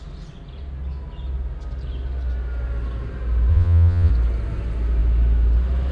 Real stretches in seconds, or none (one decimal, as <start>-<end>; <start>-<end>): 0.0-3.5; 4.1-5.9